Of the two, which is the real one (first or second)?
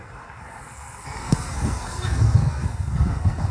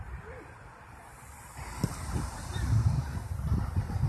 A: second